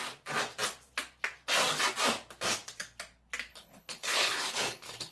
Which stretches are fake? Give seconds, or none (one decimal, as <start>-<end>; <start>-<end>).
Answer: 3.5-5.1